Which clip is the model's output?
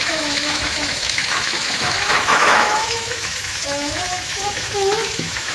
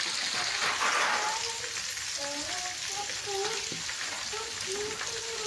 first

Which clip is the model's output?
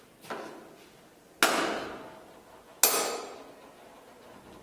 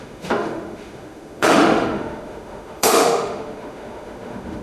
second